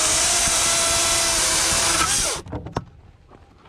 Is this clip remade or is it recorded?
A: recorded